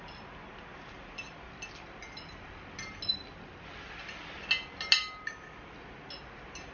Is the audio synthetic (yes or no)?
no